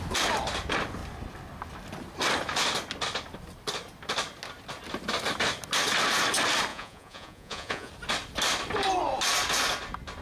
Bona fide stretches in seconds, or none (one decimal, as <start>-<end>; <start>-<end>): 0.0-6.7; 7.9-10.2

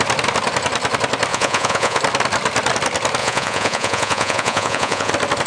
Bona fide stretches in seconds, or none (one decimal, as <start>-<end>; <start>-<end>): 0.0-1.3; 2.0-3.2; 5.1-5.5